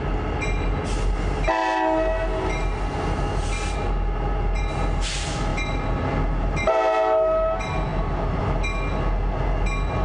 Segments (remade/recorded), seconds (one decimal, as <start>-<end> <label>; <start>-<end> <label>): 0.0-10.0 recorded